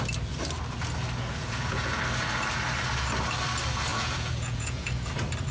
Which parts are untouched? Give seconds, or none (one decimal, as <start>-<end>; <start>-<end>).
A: 0.0-1.4; 2.0-3.9; 5.1-5.5